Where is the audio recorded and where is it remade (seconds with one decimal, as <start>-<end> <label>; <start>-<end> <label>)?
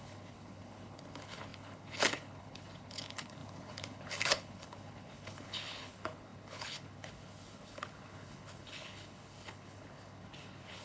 0.0-10.8 remade